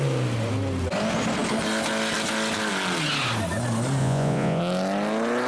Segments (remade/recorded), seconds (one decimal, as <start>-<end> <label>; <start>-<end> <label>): 0.0-4.0 recorded; 4.0-4.6 remade; 4.6-5.5 recorded

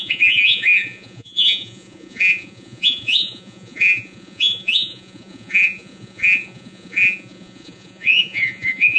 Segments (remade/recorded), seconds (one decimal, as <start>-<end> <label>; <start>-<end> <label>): 0.0-9.0 remade

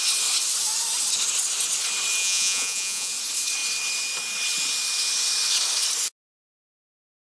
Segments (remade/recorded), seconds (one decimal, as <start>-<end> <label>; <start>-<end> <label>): 0.0-2.2 recorded; 2.2-3.1 remade; 3.1-7.3 recorded

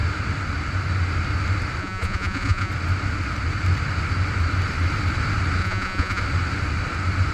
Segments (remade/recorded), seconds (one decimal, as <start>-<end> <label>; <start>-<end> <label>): 0.0-1.8 recorded; 1.8-2.7 remade; 2.7-5.6 recorded; 5.6-6.2 remade; 6.2-7.3 recorded